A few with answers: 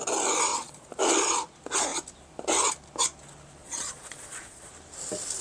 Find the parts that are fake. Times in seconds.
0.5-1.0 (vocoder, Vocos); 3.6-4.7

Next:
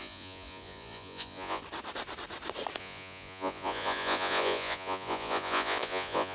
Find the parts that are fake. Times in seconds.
0.0-1.6 (vocoder, Vocos); 2.8-6.3

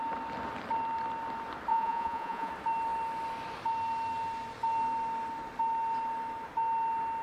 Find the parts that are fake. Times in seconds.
1.7-2.5 (vocoder, Vocos)